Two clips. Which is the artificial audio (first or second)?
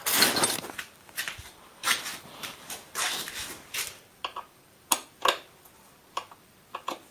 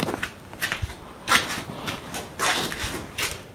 first